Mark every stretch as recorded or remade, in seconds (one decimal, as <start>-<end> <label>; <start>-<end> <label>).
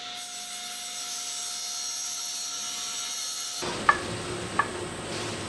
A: 0.0-5.5 recorded